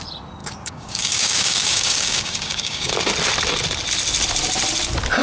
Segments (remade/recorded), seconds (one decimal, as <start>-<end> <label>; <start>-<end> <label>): 0.0-0.4 recorded; 0.4-2.9 remade; 2.9-5.2 recorded